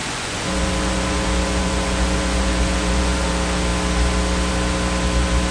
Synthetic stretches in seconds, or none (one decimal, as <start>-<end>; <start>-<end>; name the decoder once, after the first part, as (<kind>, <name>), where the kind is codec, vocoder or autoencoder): 0.0-3.3 (vocoder, Vocos)